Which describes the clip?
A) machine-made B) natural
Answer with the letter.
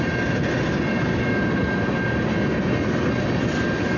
B